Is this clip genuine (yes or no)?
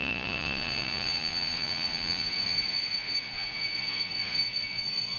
no